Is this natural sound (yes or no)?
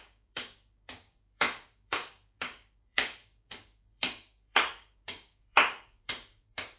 no